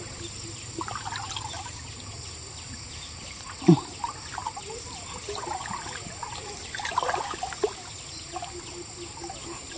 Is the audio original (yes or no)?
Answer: yes